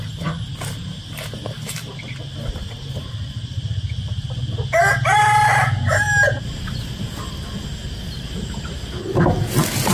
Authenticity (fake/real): real